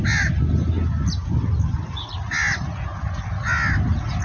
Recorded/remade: recorded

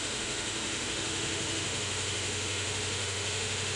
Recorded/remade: remade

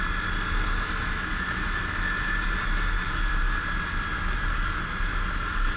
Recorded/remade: recorded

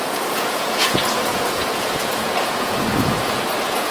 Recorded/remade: remade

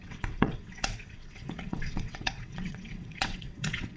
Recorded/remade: remade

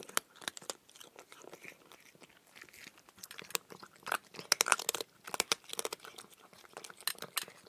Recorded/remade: recorded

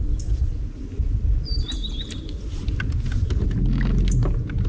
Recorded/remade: recorded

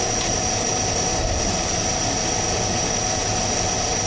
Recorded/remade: recorded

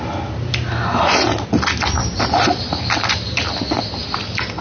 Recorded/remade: recorded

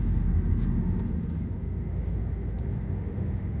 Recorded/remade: remade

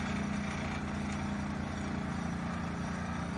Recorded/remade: recorded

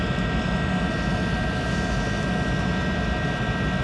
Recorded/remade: recorded